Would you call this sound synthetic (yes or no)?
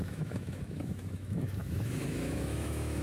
yes